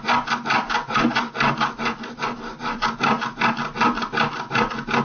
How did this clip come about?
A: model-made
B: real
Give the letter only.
B